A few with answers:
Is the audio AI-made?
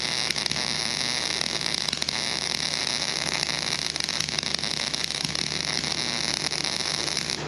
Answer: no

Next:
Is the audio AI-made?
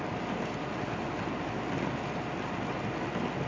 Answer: no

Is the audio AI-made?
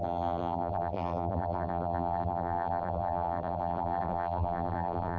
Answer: yes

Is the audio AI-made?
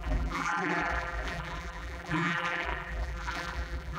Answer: yes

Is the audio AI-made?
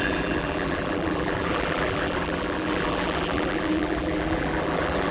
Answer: yes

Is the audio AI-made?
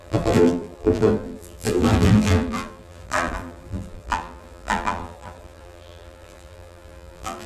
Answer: yes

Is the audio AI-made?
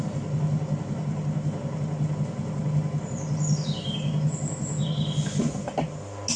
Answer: no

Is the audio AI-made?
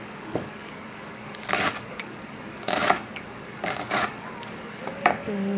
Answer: yes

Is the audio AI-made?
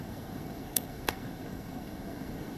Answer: yes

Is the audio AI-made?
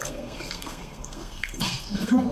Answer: yes